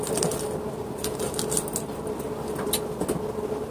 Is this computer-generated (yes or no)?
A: no